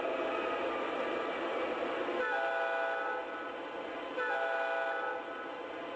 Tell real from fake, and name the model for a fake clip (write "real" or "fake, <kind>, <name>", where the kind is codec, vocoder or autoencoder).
real